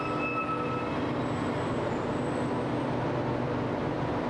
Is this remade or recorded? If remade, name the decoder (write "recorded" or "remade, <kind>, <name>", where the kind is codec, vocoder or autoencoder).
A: recorded